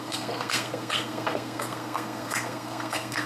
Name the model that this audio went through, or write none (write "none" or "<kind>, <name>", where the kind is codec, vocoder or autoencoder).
codec, SNAC